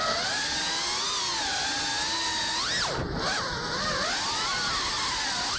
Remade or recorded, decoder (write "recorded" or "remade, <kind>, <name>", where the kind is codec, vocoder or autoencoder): recorded